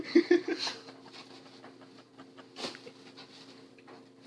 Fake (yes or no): no